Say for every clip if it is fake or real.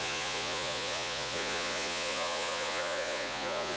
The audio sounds fake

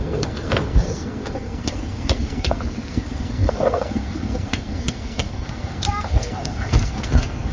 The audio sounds fake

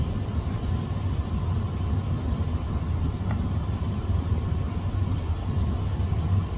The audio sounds real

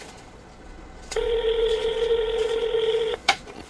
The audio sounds fake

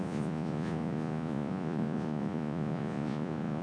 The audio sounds fake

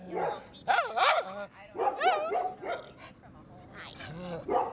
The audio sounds real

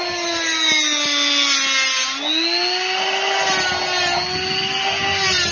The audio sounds real